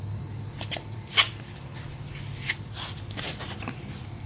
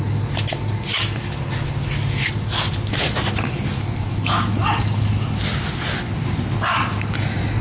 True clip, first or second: second